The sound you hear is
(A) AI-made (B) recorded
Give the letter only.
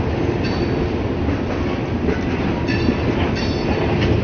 B